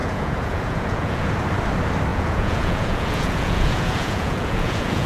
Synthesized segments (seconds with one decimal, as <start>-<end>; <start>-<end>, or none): 0.0-1.3; 2.1-5.1